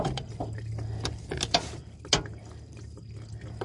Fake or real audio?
real